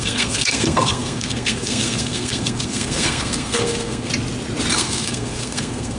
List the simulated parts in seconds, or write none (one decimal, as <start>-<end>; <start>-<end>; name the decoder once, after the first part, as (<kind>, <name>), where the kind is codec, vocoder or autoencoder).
0.0-4.1 (codec, SNAC); 4.7-6.0